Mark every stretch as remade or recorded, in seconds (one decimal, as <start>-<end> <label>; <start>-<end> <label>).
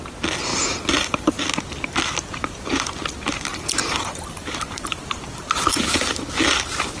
0.0-0.5 recorded; 0.5-1.4 remade; 1.4-3.5 recorded; 3.5-5.0 remade; 5.0-7.0 recorded